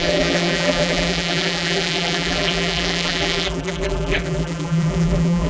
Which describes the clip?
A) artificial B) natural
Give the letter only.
A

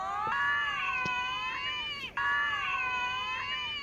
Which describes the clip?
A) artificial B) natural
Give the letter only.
B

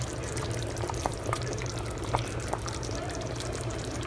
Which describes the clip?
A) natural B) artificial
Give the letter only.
B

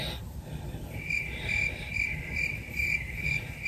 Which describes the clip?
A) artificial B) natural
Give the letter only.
B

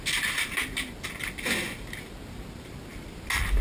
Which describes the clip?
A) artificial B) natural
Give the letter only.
B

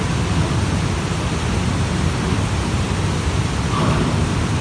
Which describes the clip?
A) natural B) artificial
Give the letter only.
B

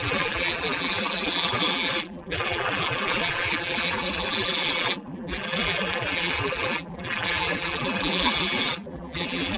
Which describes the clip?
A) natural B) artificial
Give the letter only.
B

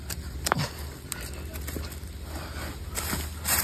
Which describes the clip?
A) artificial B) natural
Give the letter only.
B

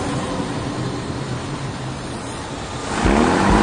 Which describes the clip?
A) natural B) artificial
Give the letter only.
A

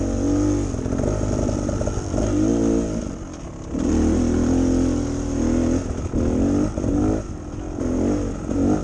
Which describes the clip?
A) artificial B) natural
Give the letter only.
B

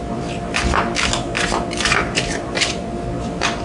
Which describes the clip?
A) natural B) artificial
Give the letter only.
B